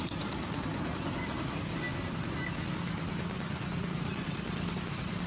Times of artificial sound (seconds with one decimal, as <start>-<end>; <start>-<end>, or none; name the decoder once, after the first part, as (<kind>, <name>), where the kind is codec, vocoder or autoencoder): none